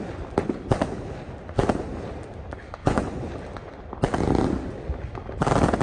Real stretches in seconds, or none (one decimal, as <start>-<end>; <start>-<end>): 0.0-2.8; 3.3-5.8